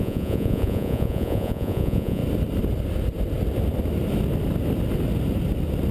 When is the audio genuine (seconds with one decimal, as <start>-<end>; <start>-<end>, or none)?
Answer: 2.2-5.9